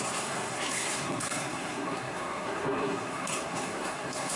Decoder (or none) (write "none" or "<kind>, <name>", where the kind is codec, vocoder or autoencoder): codec, SNAC